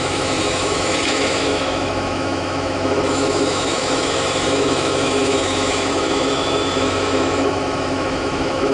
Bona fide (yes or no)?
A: no